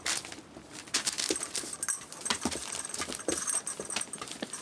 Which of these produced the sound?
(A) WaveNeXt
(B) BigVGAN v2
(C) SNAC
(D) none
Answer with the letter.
D